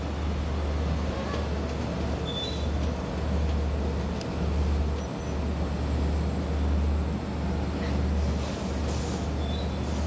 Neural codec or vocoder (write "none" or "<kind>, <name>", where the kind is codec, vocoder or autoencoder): none